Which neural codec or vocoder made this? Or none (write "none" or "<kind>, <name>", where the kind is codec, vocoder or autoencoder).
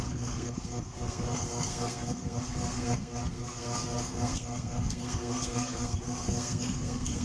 codec, SNAC